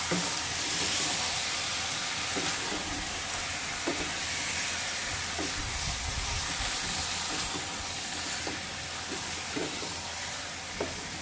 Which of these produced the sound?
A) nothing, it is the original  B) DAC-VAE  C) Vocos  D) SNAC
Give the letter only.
A